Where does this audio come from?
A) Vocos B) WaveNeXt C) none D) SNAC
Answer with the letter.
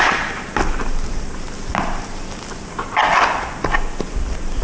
C